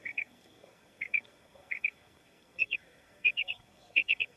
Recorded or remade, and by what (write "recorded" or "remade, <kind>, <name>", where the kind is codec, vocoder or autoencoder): remade, codec, SNAC